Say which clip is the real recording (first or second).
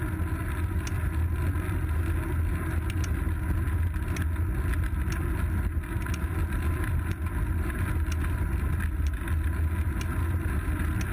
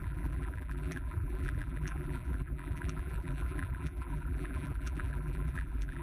first